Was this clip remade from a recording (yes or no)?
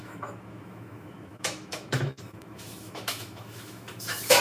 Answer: yes